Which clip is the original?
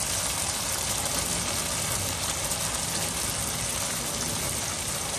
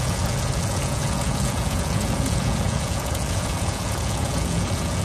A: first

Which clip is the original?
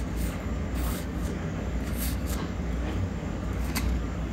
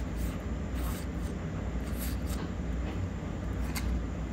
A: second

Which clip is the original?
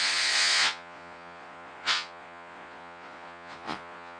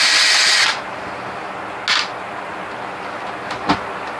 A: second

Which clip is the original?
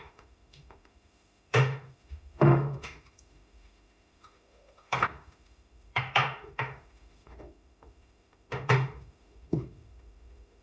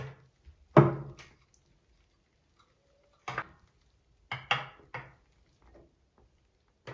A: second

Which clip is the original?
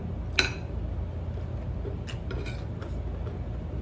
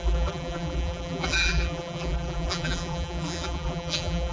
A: first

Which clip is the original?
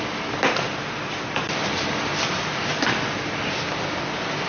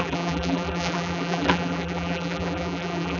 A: first